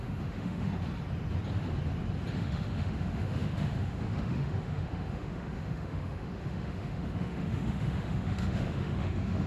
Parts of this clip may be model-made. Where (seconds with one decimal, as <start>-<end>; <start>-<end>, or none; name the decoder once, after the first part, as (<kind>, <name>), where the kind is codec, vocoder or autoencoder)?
0.0-0.7 (autoencoder, DAC-VAE); 2.3-9.5